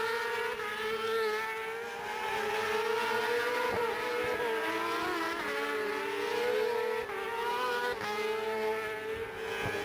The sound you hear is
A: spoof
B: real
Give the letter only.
B